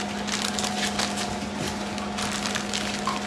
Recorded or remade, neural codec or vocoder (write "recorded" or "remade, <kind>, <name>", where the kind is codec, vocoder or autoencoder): recorded